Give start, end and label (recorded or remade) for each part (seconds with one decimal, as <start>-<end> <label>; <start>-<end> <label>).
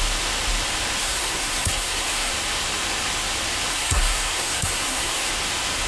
0.0-1.0 recorded; 1.0-2.3 remade; 2.3-3.7 recorded; 3.7-5.3 remade; 5.3-5.9 recorded